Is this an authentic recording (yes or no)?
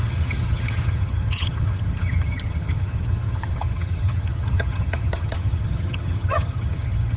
no